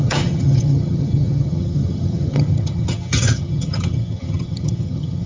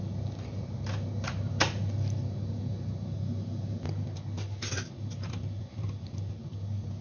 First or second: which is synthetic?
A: first